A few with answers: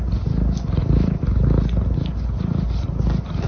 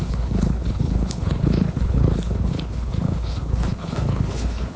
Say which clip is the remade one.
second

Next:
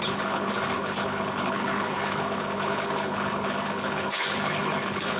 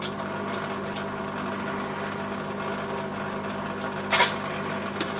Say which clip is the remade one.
first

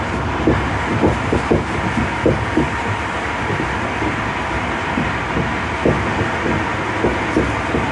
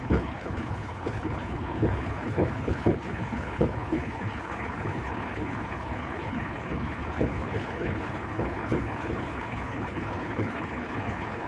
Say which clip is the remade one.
second